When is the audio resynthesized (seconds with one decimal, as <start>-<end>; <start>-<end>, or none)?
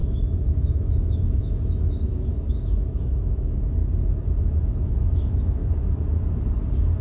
0.0-3.8; 4.8-5.6